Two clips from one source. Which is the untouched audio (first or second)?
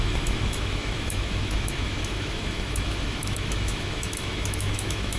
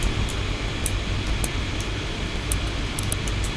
second